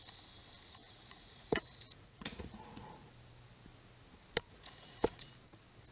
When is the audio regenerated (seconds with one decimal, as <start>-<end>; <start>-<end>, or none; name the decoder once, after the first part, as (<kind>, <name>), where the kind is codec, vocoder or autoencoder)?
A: 0.8-3.1 (vocoder, Vocos); 4.5-5.3